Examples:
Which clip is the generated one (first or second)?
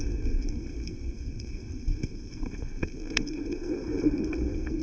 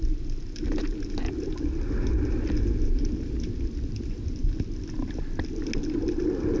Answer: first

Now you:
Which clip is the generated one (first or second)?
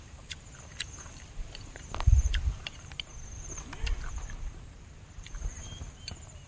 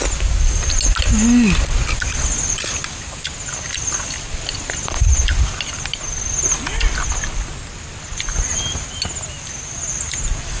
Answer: first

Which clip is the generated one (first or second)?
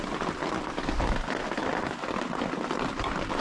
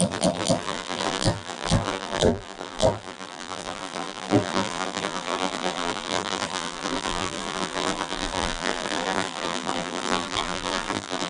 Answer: second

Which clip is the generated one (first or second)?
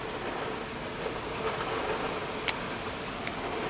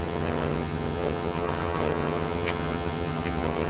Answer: second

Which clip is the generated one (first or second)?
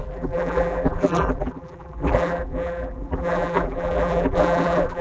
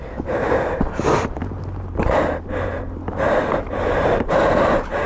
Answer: first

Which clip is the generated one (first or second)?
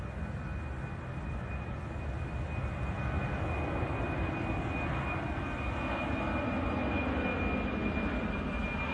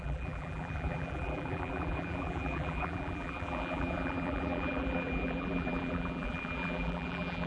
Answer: second